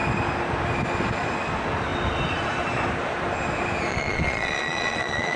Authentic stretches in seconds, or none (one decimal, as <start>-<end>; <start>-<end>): 0.0-3.9